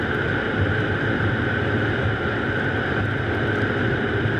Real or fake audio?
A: real